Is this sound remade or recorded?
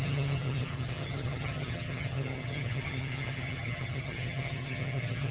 remade